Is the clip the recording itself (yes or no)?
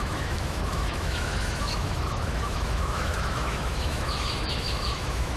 no